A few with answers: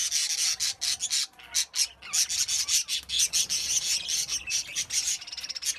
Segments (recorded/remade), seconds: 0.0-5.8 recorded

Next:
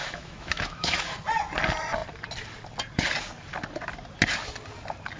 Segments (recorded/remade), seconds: 0.0-1.1 remade; 1.1-5.2 recorded

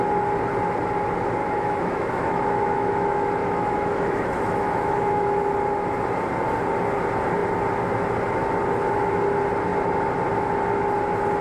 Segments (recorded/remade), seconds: 0.0-1.4 recorded; 1.4-5.5 remade; 5.5-11.4 recorded